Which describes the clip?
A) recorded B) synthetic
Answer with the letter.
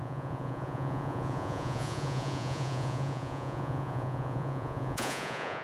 B